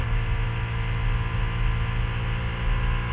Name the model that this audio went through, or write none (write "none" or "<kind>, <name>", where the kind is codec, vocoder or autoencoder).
none